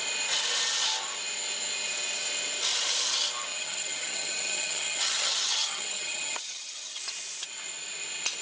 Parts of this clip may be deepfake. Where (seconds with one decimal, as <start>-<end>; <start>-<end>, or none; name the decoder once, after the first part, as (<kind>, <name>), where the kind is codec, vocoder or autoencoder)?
3.5-7.0 (vocoder, HiFi-GAN)